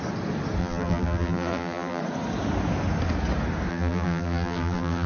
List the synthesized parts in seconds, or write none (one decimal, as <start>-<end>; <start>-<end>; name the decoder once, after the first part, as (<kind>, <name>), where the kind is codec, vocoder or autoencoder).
0.6-2.0 (vocoder, BigVGAN v2); 3.7-5.1